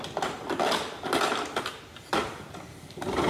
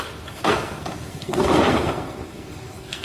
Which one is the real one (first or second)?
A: first